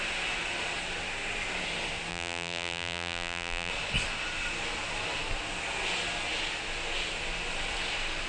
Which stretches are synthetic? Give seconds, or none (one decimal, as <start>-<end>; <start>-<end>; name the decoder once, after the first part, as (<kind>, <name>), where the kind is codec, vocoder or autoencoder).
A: 2.1-3.7 (vocoder, BigVGAN v2)